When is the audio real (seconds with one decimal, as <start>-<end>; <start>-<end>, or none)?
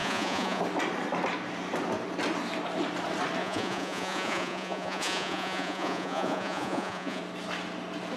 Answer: 0.6-3.4; 7.2-8.2